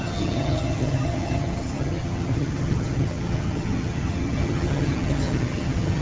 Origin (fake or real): fake